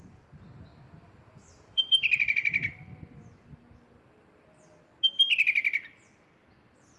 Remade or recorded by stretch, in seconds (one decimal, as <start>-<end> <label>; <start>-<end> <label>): 0.0-0.7 recorded; 0.7-4.8 remade; 4.8-7.0 recorded